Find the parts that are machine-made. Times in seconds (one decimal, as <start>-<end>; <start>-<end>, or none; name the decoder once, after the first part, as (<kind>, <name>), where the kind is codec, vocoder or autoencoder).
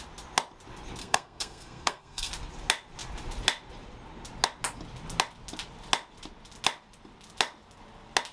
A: 1.0-2.3 (codec, SNAC)